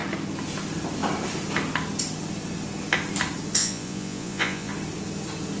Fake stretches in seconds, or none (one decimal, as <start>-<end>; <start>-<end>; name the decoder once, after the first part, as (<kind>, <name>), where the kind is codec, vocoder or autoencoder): 3.6-4.7 (vocoder, Vocos)